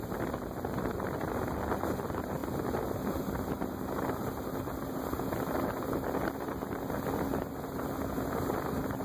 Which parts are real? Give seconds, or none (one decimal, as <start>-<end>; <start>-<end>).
0.0-9.0